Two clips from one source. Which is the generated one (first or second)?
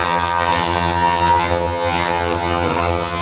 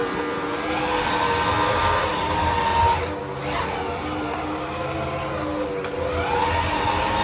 first